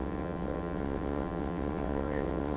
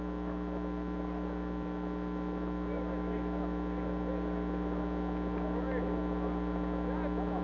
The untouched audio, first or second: second